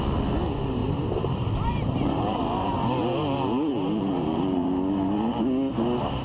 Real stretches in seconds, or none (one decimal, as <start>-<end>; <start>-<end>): 0.0-0.8; 2.4-3.7; 4.7-6.2